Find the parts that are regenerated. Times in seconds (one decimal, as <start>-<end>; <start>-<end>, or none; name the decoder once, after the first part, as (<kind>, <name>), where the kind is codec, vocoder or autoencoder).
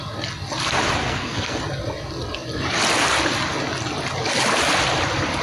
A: 1.0-1.6 (codec, SNAC)